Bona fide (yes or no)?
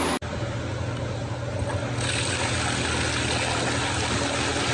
yes